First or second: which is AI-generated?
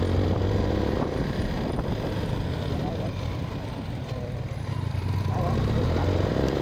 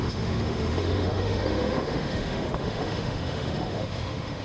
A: second